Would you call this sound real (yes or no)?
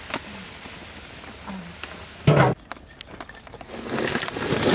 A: yes